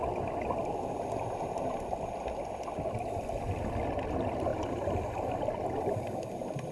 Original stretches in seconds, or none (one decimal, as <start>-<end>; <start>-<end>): 0.0-4.5